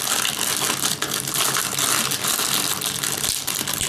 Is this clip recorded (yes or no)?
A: yes